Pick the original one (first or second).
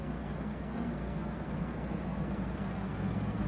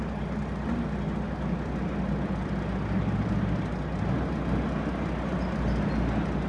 second